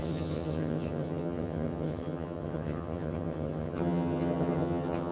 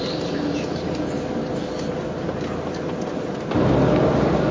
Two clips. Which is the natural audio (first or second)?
second